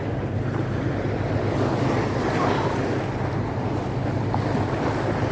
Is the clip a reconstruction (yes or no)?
no